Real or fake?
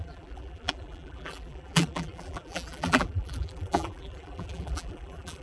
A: fake